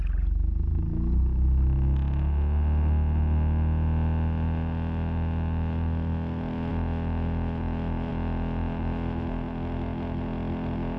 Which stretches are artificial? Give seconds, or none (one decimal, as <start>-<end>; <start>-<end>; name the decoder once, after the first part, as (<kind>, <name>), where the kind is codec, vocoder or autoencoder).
none